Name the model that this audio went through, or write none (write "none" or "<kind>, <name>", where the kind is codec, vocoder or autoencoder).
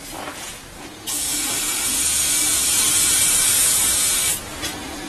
vocoder, Vocos